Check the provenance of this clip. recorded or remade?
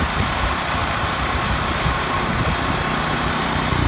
remade